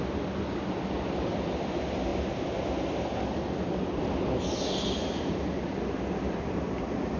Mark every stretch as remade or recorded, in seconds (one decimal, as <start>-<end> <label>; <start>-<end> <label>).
0.0-7.2 recorded

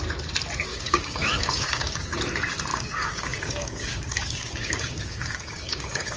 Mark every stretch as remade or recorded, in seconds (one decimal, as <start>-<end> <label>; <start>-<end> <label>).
0.0-0.7 recorded; 0.7-2.2 remade; 2.2-2.7 recorded; 2.7-6.2 remade

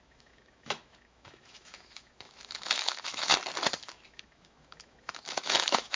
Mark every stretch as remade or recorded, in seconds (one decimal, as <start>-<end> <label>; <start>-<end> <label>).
0.0-3.3 remade; 3.3-3.8 recorded; 3.8-6.0 remade